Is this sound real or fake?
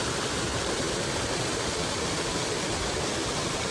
real